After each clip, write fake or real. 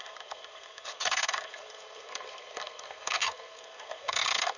fake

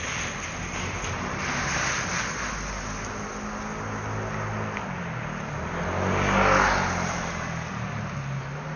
real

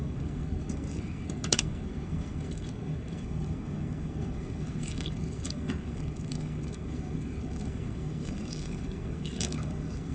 fake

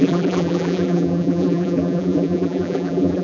fake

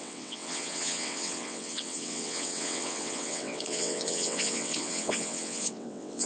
fake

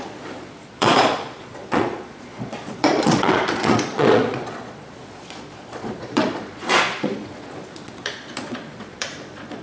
fake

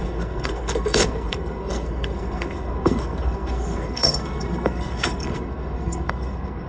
fake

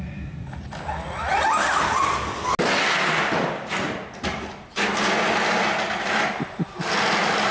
real